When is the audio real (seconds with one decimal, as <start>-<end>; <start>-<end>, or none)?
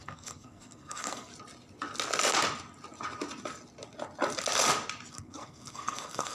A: 1.3-5.1